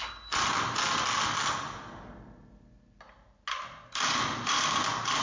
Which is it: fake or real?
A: real